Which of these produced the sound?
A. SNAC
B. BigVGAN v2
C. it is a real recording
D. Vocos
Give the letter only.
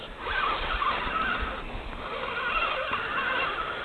C